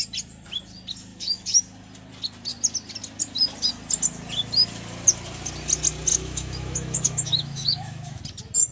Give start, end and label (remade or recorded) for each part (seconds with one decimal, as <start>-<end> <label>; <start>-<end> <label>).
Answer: 0.0-1.1 recorded; 1.1-1.6 remade; 1.6-6.1 recorded; 6.1-8.2 remade; 8.2-8.7 recorded